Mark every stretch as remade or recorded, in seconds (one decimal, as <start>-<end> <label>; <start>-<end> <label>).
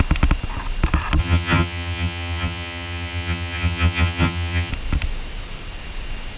0.0-1.2 recorded; 1.2-4.7 remade; 4.7-6.4 recorded